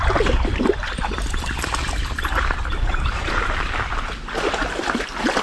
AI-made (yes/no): no